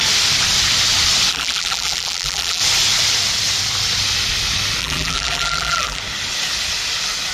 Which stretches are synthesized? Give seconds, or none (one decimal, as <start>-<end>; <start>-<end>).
1.3-2.6; 4.8-6.0